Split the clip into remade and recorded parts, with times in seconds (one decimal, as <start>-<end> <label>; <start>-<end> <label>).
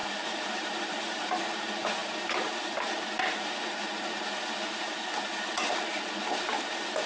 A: 0.0-1.3 remade; 1.3-7.1 recorded